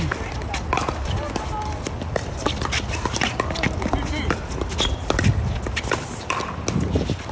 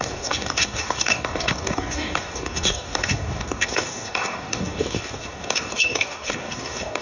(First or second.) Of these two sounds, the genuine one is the first